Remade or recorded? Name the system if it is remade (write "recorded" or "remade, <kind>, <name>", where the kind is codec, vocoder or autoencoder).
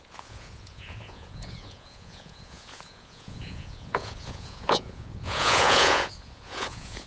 remade, vocoder, Vocos